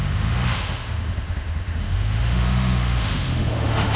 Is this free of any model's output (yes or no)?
no